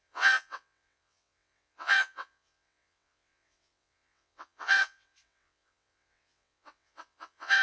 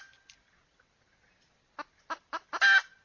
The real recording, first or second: second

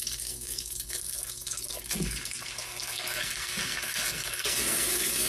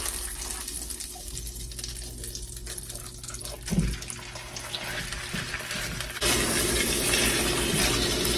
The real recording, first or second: second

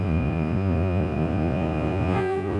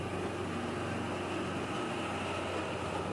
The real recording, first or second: second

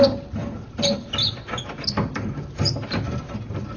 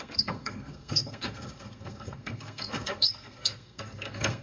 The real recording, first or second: first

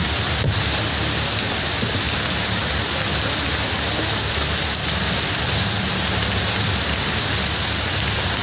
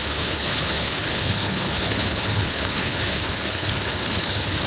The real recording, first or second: first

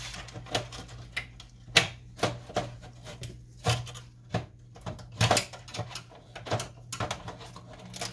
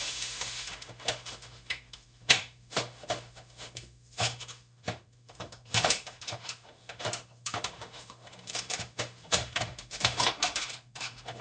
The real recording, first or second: first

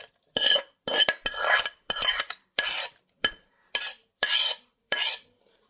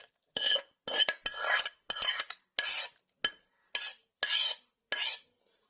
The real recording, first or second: second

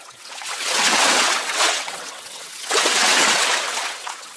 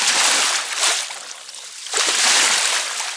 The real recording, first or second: second